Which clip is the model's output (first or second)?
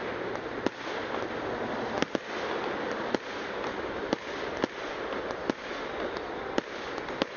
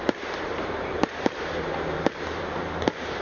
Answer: second